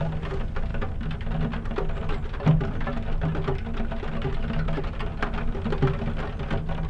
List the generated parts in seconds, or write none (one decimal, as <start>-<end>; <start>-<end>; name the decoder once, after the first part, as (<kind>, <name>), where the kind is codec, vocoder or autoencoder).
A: none